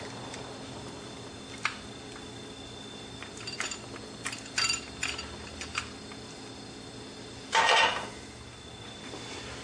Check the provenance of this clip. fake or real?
real